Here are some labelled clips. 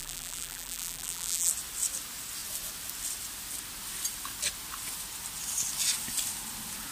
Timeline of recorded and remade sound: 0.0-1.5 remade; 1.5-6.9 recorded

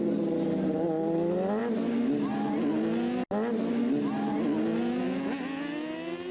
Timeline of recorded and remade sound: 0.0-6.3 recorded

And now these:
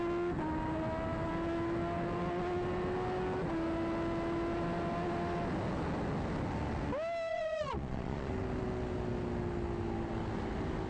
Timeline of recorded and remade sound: 0.0-7.3 recorded; 7.3-8.3 remade; 8.3-10.9 recorded